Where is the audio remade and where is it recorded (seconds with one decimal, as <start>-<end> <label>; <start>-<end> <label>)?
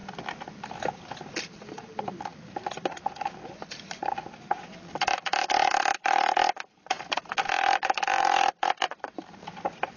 0.0-1.4 recorded; 1.4-10.0 remade